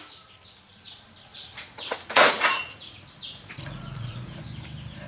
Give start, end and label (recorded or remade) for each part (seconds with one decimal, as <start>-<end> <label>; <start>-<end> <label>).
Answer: 0.0-1.3 recorded; 1.3-4.4 remade; 4.4-5.1 recorded

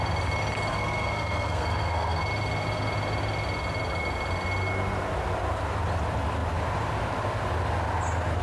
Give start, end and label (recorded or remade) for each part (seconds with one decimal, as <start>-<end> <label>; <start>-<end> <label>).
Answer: 0.0-0.7 recorded; 0.7-2.2 remade; 2.2-8.4 recorded

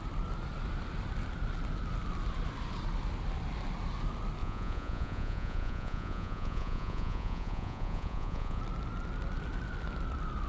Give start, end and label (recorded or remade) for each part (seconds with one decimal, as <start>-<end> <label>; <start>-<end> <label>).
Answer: 0.0-4.4 recorded; 4.4-8.6 remade; 8.6-10.5 recorded